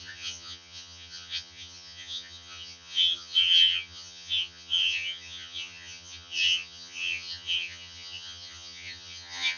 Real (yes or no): no